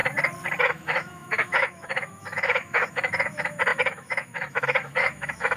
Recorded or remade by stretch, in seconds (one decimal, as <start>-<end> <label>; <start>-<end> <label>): 0.0-0.6 recorded; 0.6-5.6 remade